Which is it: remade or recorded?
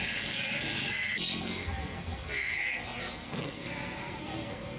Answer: remade